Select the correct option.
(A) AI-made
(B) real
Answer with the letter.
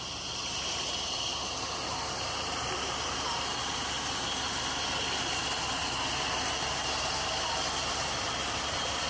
B